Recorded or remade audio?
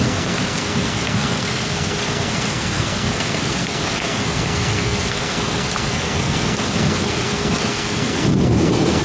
remade